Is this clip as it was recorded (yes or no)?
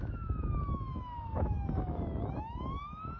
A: no